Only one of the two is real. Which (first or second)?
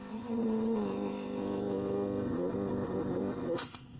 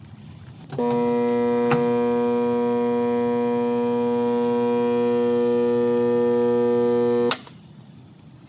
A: second